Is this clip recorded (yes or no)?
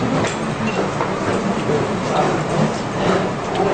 yes